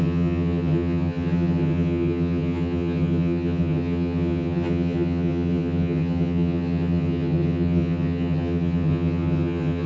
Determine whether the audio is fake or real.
fake